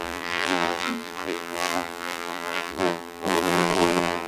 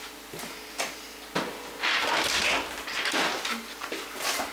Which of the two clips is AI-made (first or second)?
first